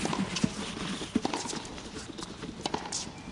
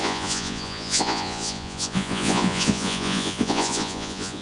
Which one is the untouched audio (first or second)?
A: first